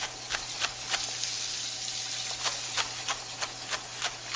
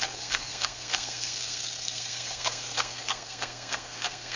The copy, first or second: second